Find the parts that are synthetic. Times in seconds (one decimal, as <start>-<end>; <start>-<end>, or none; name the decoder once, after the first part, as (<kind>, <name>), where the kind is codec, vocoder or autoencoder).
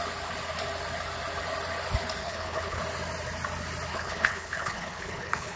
2.2-2.8 (codec, HILCodec); 3.9-5.6